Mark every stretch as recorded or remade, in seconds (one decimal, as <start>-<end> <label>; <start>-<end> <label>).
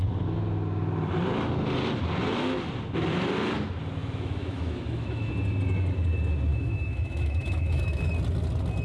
0.0-4.0 recorded; 4.0-5.3 remade; 5.3-6.5 recorded; 6.5-8.1 remade; 8.1-8.8 recorded